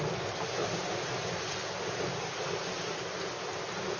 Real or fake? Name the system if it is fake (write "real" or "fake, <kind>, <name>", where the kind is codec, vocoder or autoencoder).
real